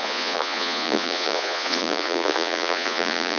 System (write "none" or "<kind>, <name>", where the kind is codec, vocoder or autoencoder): vocoder, Vocos